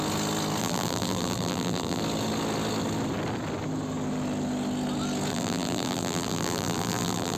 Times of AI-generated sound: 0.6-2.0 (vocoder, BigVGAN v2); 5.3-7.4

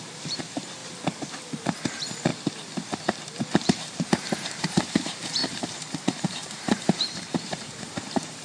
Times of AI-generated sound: 0.0-0.8 (vocoder, BigVGAN v2); 1.9-2.3; 3.6-8.4

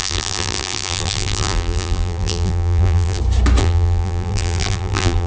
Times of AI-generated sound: 0.0-3.2 (vocoder, BigVGAN v2); 3.6-5.3

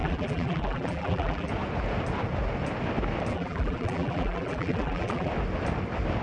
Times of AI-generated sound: 0.0-1.5 (vocoder, BigVGAN v2); 3.3-5.3

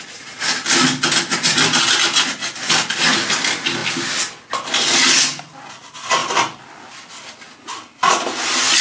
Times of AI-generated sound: 6.2-7.1 (vocoder, BigVGAN v2)